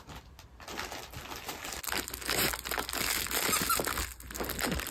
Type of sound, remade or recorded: recorded